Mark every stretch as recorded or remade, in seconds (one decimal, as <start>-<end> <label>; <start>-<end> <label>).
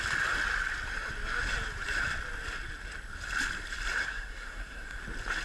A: 0.0-4.0 recorded; 4.0-5.0 remade; 5.0-5.4 recorded